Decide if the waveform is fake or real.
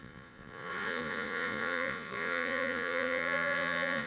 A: fake